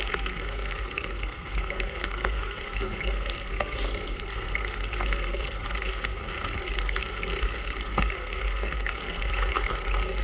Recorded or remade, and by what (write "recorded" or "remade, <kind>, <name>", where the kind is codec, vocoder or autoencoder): remade, codec, SNAC